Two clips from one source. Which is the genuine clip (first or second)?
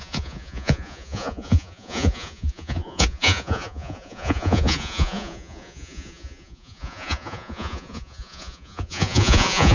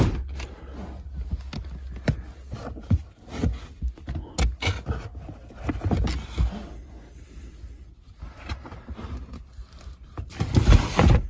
second